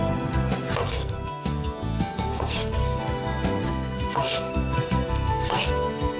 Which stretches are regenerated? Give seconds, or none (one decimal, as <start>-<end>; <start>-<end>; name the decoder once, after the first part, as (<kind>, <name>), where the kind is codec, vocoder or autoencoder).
0.8-3.0 (codec, SNAC); 3.7-6.2